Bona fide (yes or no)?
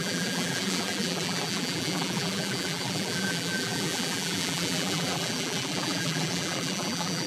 no